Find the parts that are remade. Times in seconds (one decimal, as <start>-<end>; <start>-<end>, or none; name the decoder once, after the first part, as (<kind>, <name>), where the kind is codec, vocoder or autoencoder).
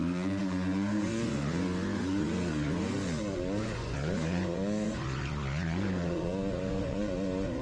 0.0-7.6 (vocoder, Vocos)